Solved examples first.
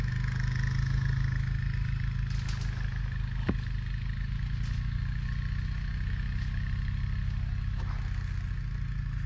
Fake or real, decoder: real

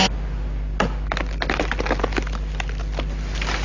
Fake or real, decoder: real